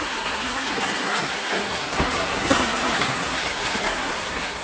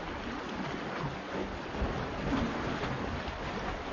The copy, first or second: first